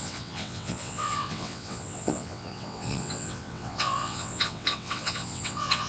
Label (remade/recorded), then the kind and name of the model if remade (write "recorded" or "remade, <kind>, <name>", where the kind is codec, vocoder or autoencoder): remade, vocoder, WaveNeXt